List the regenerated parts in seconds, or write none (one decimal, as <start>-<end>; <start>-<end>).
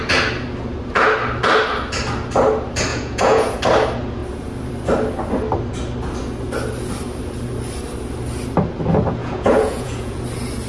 2.9-3.6; 9.2-10.2